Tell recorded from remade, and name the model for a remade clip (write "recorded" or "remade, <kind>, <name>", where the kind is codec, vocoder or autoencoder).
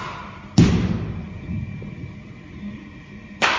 recorded